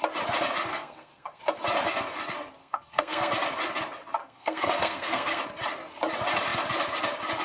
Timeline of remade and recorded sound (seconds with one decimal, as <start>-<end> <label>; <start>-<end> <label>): 0.0-0.7 recorded; 0.7-1.4 remade; 1.4-2.6 recorded; 2.6-3.3 remade; 3.3-4.2 recorded; 4.2-5.4 remade; 5.4-7.4 recorded